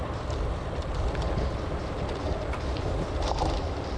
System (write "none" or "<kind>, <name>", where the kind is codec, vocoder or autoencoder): vocoder, BigVGAN v2